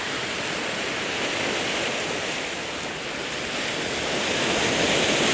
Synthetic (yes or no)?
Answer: no